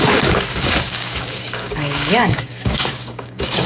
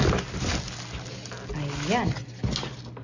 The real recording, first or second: second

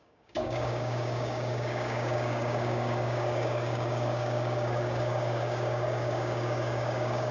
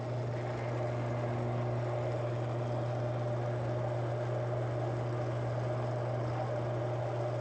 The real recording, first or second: second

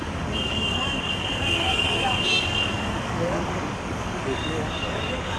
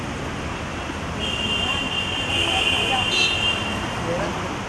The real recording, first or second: second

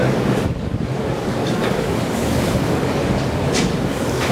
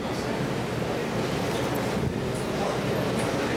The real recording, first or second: second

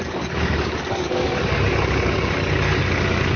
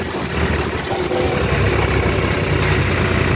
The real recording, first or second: second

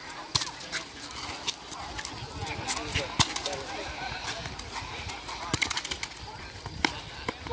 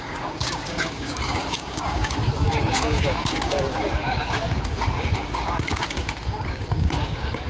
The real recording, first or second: first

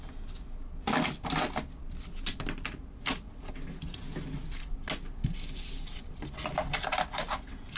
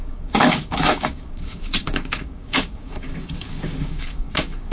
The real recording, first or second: first